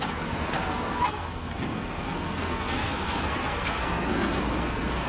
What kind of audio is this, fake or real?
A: fake